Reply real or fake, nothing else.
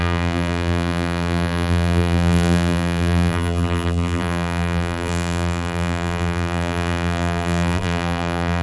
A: fake